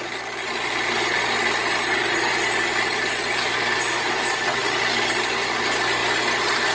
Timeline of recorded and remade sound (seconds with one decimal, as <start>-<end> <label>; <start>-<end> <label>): 0.0-6.7 recorded